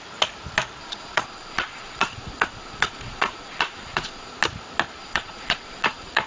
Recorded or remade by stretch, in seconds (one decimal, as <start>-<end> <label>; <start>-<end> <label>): 0.0-0.8 recorded; 0.8-4.3 remade; 4.3-5.0 recorded; 5.0-6.3 remade